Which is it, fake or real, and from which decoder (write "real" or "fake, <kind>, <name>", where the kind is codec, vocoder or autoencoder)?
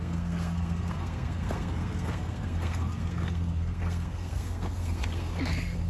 fake, codec, SNAC